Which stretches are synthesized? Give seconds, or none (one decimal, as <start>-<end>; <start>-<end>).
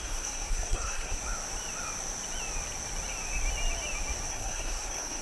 0.0-1.2; 4.3-5.2